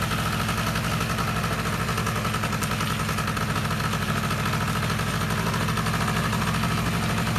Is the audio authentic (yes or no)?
yes